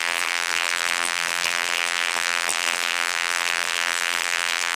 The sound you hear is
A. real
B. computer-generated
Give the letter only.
B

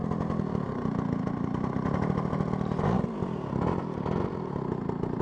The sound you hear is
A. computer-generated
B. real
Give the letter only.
B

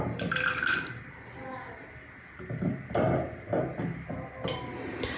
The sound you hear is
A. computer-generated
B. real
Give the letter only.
B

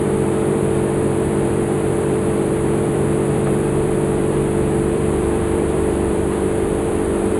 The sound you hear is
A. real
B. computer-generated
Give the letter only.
B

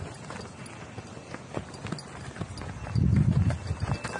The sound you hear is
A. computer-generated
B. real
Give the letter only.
B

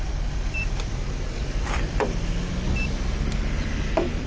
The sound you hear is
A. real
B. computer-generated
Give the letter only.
B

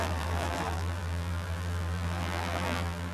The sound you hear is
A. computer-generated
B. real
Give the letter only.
A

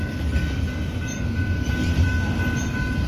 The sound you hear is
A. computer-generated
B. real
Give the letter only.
B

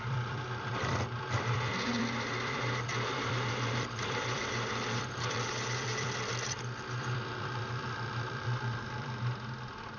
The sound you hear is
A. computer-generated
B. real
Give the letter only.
A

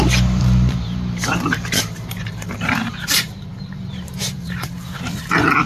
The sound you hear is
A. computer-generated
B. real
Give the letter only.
A